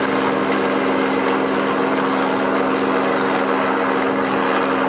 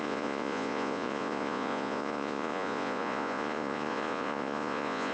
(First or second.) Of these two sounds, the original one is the first